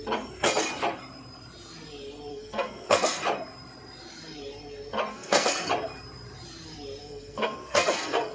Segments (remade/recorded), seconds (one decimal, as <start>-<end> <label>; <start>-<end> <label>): 0.0-2.3 recorded; 2.3-3.2 remade; 3.2-5.1 recorded; 5.1-5.7 remade; 5.7-7.0 recorded; 7.0-8.3 remade